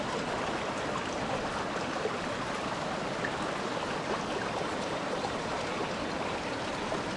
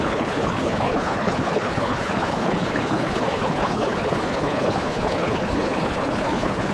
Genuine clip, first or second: first